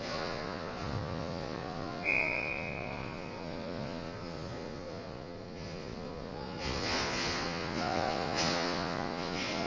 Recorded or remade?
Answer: remade